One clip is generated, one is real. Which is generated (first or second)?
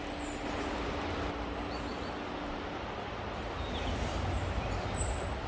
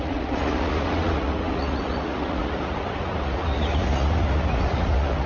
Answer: second